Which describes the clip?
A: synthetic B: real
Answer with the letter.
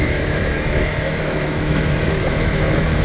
A